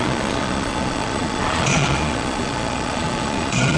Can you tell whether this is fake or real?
fake